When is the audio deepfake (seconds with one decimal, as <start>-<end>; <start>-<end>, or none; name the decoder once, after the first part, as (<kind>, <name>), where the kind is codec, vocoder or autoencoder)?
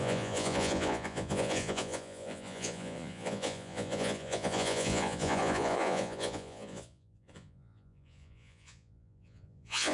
0.0-9.9 (vocoder, Vocos)